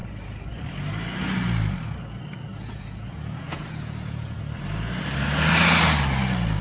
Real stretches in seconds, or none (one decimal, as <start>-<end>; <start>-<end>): 0.0-2.5; 4.4-6.6